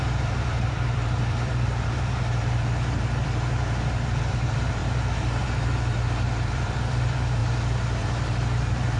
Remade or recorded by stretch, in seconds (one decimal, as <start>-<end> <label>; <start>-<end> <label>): 0.0-7.4 remade; 7.4-8.0 recorded; 8.0-9.0 remade